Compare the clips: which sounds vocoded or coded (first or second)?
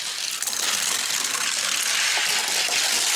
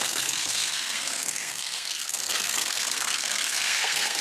second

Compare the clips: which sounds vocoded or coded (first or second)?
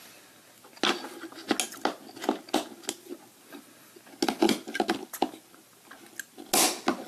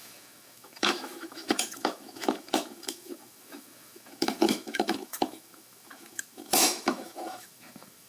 second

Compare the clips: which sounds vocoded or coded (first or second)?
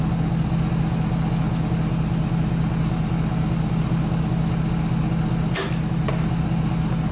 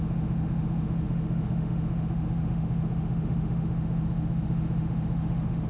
second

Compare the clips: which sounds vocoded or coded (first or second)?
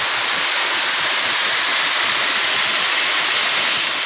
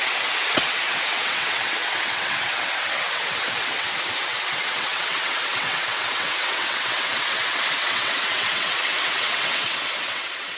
second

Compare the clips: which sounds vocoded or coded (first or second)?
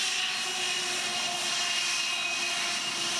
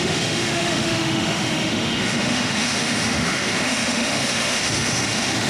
second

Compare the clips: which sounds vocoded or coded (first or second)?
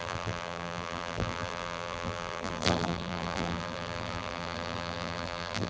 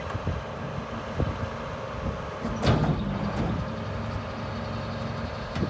first